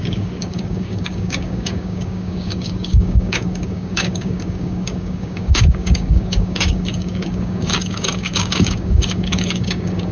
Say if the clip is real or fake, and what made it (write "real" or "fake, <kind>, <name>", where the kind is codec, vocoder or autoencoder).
fake, codec, DAC